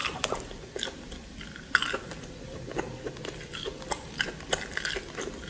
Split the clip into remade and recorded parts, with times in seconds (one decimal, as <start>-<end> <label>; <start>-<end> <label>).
0.0-5.5 recorded